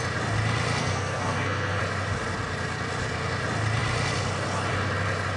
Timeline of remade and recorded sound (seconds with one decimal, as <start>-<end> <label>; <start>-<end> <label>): 0.0-0.8 recorded; 0.8-1.8 remade; 1.8-5.4 recorded